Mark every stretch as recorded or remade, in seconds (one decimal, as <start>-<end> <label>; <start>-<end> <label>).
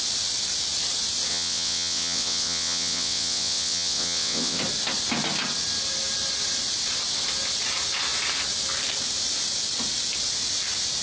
0.0-1.3 recorded; 1.3-4.6 remade; 4.6-11.0 recorded